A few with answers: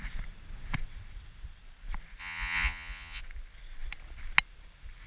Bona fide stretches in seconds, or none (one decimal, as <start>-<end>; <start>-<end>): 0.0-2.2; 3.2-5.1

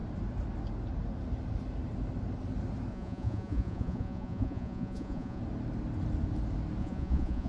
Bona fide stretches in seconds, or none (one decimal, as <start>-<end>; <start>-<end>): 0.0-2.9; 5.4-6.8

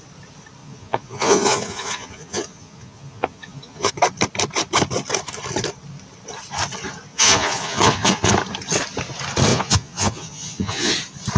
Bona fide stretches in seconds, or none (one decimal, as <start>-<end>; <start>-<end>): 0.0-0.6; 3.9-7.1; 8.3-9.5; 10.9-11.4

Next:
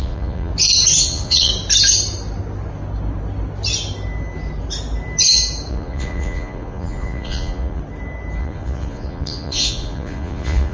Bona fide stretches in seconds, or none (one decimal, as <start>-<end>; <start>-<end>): 0.5-1.0; 1.5-5.7; 7.8-8.4

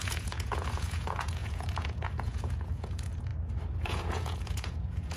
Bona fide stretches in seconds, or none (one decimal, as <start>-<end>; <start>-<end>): 3.3-3.8